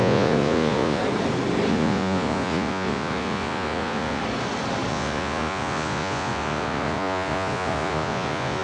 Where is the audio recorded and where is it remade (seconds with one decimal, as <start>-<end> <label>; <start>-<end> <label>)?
0.0-1.0 remade; 1.0-1.7 recorded; 1.7-4.2 remade; 4.2-4.9 recorded; 4.9-8.6 remade